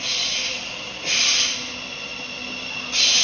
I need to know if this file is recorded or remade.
recorded